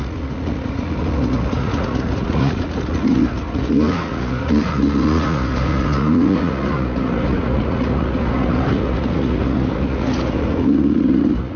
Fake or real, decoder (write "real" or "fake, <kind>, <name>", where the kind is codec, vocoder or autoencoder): fake, vocoder, Vocos